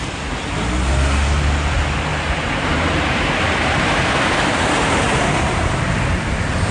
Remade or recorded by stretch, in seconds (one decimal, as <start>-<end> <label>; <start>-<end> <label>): 0.0-2.1 recorded; 2.1-6.1 remade; 6.1-6.7 recorded